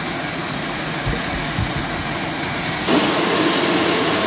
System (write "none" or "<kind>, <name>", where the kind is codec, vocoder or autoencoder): vocoder, Vocos